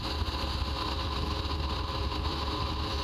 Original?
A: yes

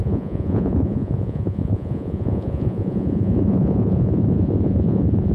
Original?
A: no